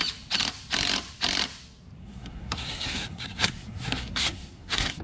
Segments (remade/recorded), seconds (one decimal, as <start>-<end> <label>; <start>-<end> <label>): 0.0-2.0 recorded; 2.0-5.0 remade